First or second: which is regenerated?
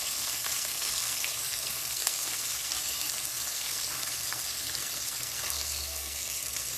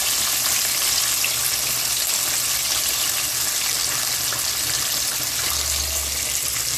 first